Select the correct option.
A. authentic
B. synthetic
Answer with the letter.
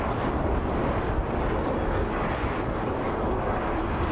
A